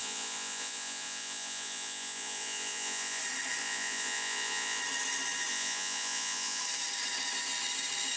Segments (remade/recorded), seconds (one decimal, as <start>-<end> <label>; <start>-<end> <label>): 0.0-3.2 remade; 3.2-3.6 recorded; 3.6-4.8 remade; 4.8-5.5 recorded; 5.5-6.6 remade; 6.6-8.2 recorded